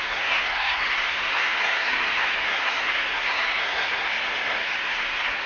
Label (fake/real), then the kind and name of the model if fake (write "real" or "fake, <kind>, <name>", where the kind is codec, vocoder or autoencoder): fake, codec, SNAC